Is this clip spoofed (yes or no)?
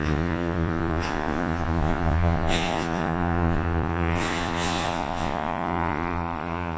yes